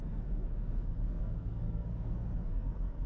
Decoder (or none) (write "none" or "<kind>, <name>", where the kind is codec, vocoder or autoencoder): codec, SNAC